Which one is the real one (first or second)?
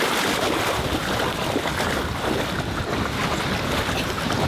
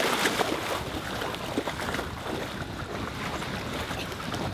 second